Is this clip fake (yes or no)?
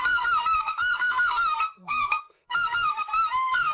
yes